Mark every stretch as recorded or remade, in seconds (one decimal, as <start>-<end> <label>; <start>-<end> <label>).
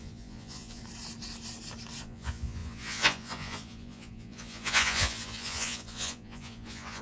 0.0-0.8 remade; 0.8-2.0 recorded; 2.0-7.0 remade